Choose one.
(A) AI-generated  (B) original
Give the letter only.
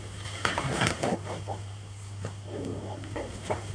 A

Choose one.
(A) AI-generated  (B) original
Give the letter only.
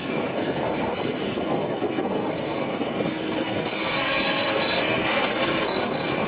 A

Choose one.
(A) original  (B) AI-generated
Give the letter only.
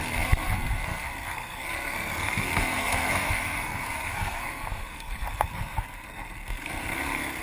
B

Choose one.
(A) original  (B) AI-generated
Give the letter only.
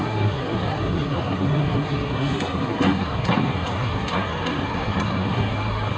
B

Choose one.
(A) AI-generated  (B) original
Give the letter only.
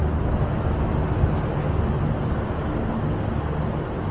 B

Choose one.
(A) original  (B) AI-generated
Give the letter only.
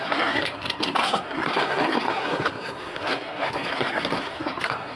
B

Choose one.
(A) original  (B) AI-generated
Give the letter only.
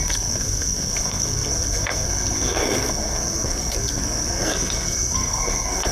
B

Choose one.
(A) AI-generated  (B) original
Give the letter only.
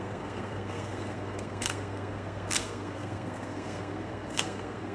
A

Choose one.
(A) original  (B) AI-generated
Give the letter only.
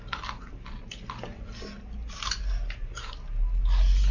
A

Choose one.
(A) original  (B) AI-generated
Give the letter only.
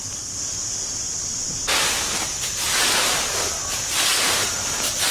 A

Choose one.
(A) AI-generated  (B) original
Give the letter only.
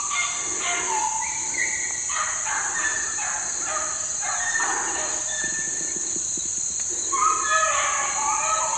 B